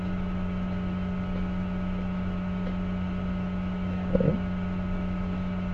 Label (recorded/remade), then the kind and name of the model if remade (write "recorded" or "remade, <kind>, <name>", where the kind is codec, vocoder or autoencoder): remade, autoencoder, DAC-VAE